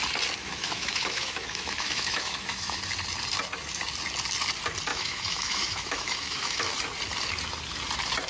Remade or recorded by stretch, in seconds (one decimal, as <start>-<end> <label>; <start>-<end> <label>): 0.0-0.4 recorded; 0.4-2.8 remade; 2.8-4.9 recorded; 4.9-6.7 remade; 6.7-8.3 recorded